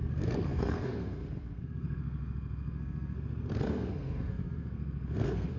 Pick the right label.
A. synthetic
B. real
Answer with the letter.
A